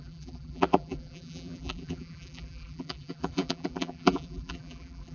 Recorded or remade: remade